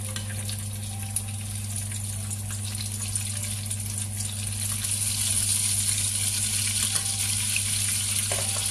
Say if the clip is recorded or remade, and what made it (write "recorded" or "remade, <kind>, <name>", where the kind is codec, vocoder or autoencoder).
recorded